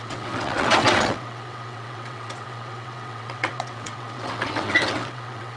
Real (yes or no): no